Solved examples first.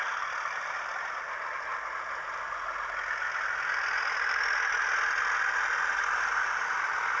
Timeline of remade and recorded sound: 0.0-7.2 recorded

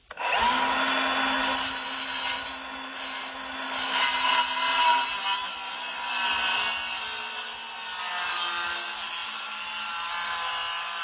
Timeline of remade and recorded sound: 0.0-11.0 recorded